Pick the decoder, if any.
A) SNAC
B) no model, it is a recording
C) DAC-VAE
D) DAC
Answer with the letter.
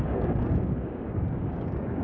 D